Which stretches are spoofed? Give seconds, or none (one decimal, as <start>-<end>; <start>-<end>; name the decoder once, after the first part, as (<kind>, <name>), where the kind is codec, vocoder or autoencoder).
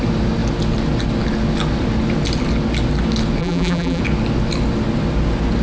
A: 3.4-4.0 (vocoder, BigVGAN v2)